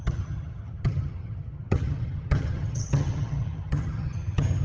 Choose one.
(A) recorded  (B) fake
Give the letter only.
B